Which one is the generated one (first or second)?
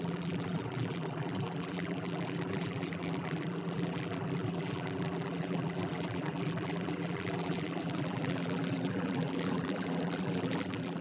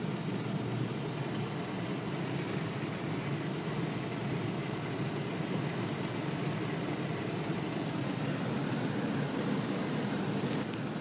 first